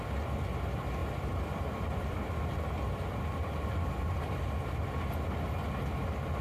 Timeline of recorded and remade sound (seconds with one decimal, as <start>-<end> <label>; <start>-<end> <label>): 0.0-1.0 recorded; 1.0-4.8 remade; 4.8-6.4 recorded